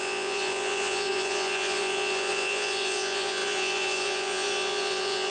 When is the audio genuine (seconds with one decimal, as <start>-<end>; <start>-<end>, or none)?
none